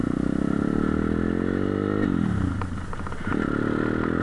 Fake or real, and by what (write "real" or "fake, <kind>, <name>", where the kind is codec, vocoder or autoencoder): real